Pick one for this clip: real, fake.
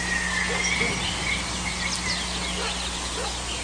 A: real